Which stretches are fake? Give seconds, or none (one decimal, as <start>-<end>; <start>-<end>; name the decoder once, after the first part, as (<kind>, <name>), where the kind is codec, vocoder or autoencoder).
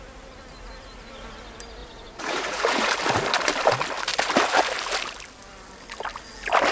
1.8-2.9 (vocoder, Vocos)